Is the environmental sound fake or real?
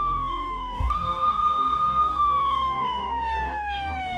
fake